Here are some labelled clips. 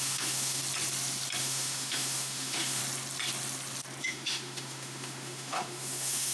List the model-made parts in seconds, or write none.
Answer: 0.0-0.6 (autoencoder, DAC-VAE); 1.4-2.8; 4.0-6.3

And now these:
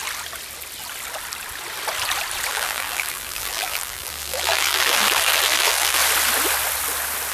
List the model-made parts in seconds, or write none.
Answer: 2.5-6.0 (vocoder, BigVGAN v2)